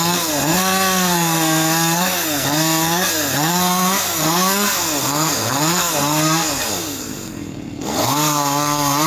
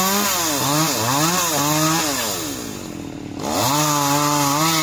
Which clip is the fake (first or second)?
first